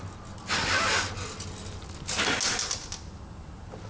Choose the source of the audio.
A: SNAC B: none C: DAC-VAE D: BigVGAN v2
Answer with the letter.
B